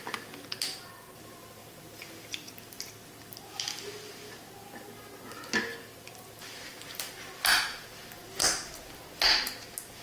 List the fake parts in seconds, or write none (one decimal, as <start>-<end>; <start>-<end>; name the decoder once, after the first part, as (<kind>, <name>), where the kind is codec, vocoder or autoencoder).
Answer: 6.7-7.3 (vocoder, BigVGAN v2)